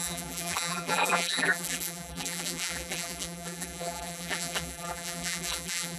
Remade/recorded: remade